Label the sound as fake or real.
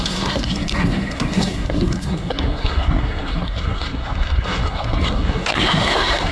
fake